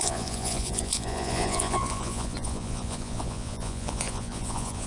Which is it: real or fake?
fake